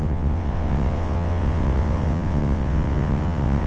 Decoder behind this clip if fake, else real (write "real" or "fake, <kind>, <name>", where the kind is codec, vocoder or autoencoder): fake, vocoder, WaveNeXt